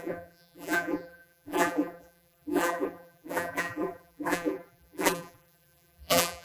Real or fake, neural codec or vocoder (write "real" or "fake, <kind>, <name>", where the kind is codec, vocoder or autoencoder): fake, vocoder, BigVGAN v2